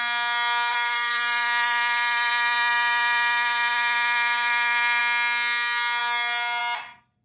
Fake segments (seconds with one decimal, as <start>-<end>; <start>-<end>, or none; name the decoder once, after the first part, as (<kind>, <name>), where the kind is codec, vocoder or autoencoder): 0.7-5.0 (vocoder, BigVGAN v2)